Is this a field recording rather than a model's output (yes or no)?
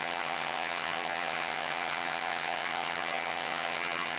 no